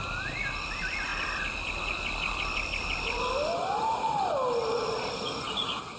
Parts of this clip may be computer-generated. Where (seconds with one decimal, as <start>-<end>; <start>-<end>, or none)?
none